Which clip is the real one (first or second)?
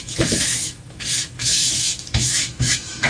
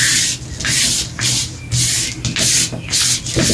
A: second